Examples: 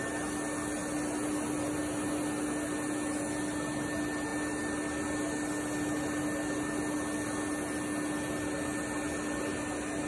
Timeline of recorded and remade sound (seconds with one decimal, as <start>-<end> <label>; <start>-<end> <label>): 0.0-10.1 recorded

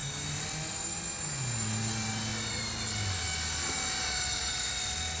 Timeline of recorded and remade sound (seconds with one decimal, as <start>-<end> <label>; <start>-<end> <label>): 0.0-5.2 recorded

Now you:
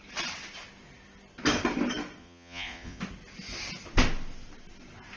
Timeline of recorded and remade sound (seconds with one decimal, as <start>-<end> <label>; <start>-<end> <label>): 0.0-2.2 recorded; 2.2-3.0 remade; 3.0-5.2 recorded

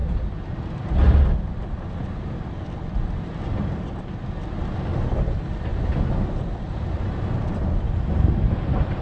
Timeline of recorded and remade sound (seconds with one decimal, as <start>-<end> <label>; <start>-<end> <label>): 0.0-9.0 recorded

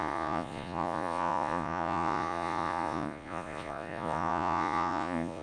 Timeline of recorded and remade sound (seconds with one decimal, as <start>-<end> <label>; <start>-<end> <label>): 0.0-5.4 remade

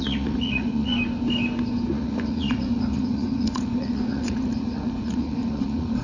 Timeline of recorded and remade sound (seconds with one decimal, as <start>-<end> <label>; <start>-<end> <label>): 0.0-0.9 remade; 0.9-1.9 recorded; 1.9-6.0 remade